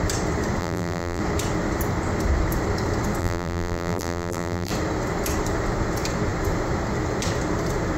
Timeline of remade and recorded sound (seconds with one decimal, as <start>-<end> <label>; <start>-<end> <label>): 0.0-0.6 recorded; 0.6-1.2 remade; 1.2-3.2 recorded; 3.2-4.7 remade; 4.7-8.0 recorded